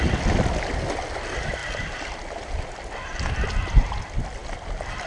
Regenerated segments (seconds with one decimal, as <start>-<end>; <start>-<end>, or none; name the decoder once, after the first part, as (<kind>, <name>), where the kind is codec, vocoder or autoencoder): none